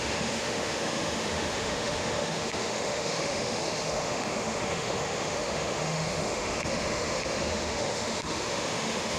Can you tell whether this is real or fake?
fake